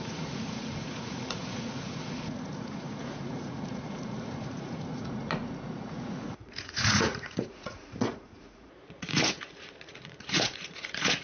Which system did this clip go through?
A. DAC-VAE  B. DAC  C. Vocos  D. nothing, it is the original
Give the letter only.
C